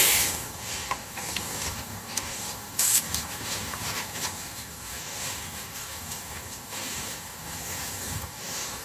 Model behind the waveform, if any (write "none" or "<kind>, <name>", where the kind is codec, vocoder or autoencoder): codec, DAC